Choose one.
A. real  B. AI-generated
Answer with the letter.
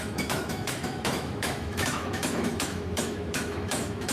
B